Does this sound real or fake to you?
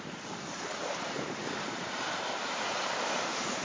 fake